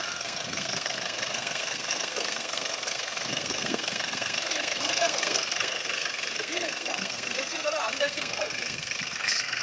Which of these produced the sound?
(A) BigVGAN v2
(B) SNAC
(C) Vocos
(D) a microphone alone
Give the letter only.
B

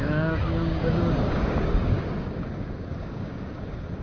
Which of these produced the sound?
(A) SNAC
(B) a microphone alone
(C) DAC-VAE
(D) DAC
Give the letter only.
D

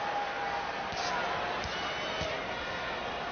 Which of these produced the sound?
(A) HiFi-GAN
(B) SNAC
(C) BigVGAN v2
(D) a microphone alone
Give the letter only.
D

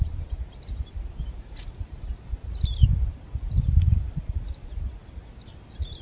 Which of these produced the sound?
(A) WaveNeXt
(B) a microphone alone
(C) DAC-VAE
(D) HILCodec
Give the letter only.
B